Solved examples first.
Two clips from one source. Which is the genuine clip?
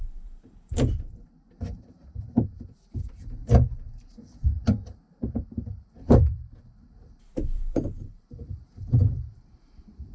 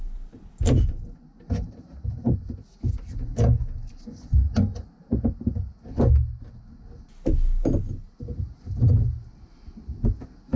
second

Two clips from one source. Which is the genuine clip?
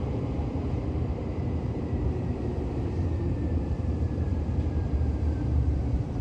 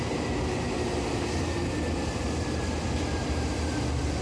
second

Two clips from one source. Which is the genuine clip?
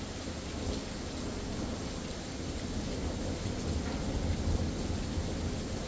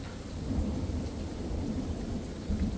first